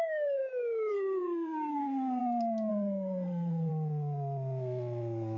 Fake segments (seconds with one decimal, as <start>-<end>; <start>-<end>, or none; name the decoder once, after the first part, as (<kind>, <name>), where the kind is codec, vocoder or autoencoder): 0.0-0.4 (codec, SNAC); 0.9-2.2; 2.7-3.7